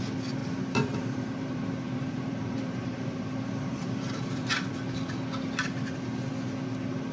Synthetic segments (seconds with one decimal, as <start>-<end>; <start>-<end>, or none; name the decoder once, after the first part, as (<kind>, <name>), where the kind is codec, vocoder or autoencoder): 0.4-4.7 (vocoder, BigVGAN v2)